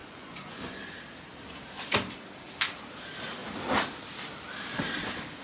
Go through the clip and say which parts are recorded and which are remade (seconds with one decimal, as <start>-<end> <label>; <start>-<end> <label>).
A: 0.0-0.8 remade; 0.8-5.4 recorded